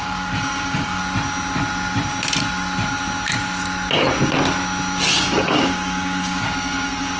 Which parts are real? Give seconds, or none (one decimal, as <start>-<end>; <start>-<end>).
1.0-5.3